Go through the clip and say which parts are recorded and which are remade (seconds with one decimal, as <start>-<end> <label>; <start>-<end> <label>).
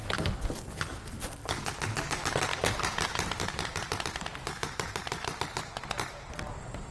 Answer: 0.0-2.5 recorded; 2.5-6.9 remade